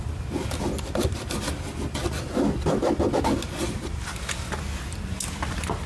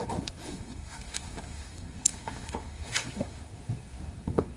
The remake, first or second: second